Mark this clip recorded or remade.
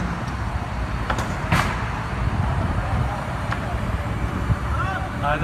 remade